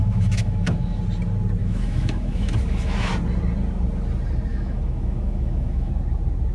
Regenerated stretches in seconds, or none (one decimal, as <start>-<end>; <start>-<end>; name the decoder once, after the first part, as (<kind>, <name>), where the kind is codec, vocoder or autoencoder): 0.0-1.0 (autoencoder, DAC-VAE); 1.6-3.1; 4.5-5.9